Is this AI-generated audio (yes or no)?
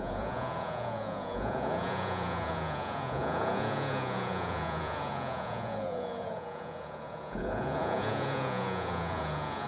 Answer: yes